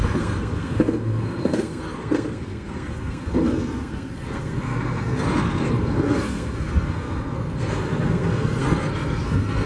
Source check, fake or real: fake